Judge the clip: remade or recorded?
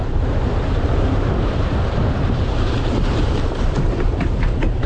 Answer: remade